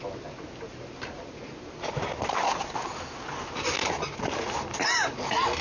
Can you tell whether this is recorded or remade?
recorded